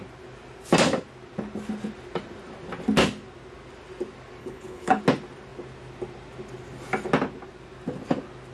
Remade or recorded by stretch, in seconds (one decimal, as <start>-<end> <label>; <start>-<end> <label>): 0.0-4.4 recorded; 4.4-5.0 remade; 5.0-8.5 recorded